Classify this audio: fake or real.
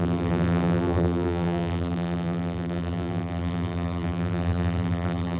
fake